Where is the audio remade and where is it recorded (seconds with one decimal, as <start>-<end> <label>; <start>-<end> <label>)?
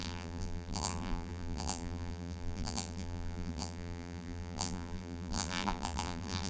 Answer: 0.0-6.5 remade